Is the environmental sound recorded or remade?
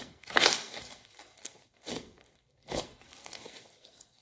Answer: remade